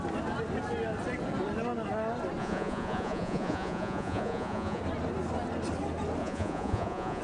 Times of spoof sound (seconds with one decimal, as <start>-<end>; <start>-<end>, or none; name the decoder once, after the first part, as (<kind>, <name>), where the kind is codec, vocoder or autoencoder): 2.4-4.8 (vocoder, Vocos); 6.2-7.2

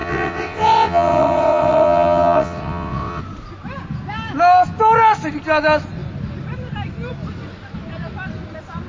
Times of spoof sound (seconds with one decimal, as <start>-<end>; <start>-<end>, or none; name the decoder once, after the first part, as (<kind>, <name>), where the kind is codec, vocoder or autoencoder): 0.0-3.2 (vocoder, WaveNeXt)

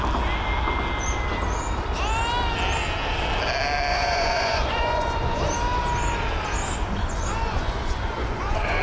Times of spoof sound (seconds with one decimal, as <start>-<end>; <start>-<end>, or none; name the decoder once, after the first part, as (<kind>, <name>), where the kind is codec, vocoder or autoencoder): 3.9-5.4 (vocoder, Vocos); 6.8-8.8

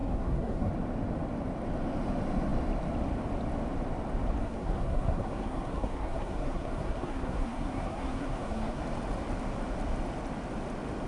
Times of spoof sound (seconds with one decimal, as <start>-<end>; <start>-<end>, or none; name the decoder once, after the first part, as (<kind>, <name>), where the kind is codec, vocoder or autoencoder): 0.0-0.7 (codec, SNAC); 4.4-8.8

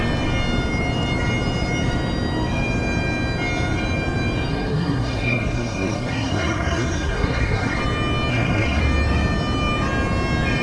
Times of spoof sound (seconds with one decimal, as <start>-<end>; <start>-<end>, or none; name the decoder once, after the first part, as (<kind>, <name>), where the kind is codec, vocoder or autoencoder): 4.5-7.8 (codec, SNAC); 8.3-8.8

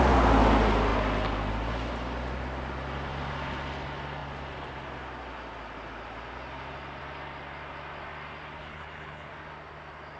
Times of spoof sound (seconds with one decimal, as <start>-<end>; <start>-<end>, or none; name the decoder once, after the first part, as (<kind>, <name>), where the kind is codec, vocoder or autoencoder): 8.6-9.3 (codec, HILCodec)